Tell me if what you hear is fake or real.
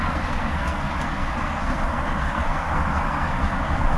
fake